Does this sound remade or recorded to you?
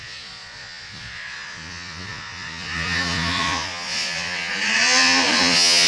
remade